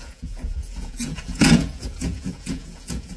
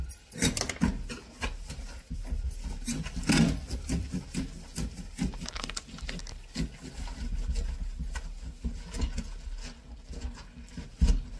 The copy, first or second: first